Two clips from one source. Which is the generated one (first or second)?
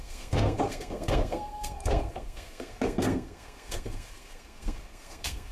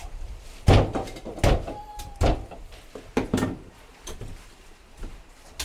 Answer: first